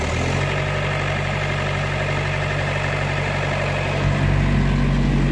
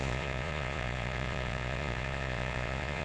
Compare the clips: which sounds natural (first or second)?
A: first